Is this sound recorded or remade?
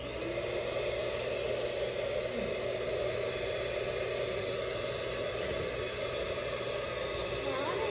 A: recorded